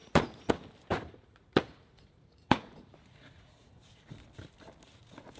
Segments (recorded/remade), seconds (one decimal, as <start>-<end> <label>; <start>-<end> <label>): 0.0-0.5 remade; 0.5-0.9 recorded; 0.9-4.1 remade; 4.1-5.4 recorded